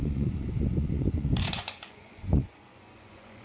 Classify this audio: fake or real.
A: fake